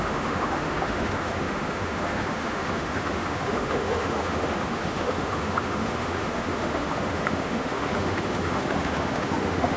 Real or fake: fake